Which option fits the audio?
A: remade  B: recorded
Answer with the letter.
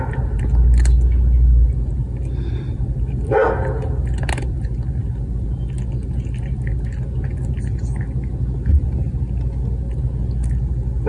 B